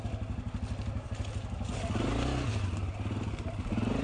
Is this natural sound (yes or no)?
yes